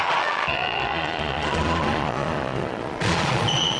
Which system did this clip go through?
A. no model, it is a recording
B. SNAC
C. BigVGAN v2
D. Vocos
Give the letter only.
D